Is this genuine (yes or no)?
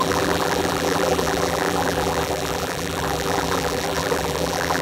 no